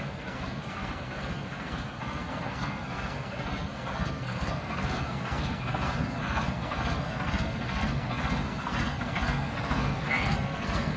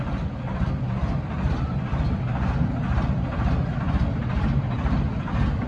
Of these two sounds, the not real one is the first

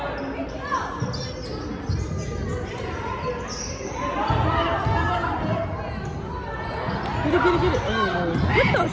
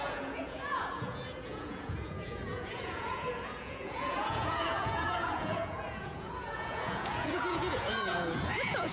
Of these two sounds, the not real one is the second